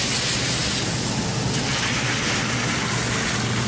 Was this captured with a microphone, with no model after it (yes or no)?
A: yes